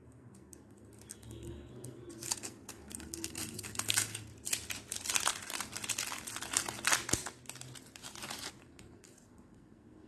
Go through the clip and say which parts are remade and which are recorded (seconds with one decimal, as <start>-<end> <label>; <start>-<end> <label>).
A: 0.0-4.3 remade; 4.3-8.6 recorded; 8.6-10.1 remade